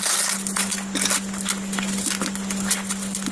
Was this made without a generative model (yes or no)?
yes